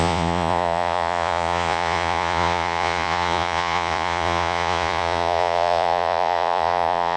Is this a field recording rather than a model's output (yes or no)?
no